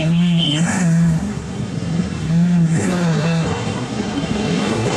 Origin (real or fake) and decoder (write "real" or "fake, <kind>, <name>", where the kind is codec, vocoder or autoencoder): fake, codec, SNAC